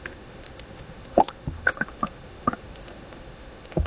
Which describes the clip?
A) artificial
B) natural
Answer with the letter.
A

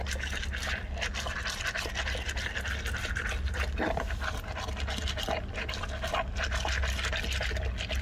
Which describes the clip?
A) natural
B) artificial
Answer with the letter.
A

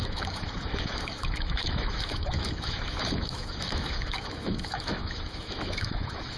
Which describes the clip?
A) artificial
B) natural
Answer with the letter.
A